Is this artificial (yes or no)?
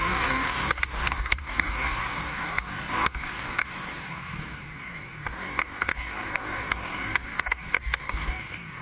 yes